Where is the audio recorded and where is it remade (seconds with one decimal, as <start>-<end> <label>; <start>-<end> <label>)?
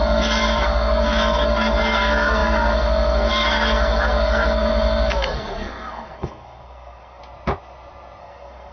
0.0-7.2 remade; 7.2-8.2 recorded; 8.2-8.7 remade